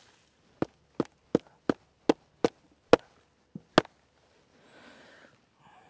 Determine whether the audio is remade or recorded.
recorded